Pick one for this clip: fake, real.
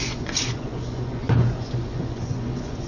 fake